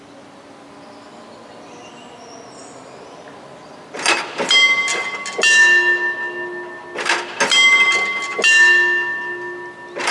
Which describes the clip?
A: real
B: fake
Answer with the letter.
A